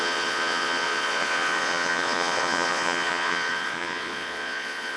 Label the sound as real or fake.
fake